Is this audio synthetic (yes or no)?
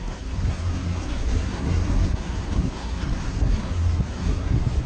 yes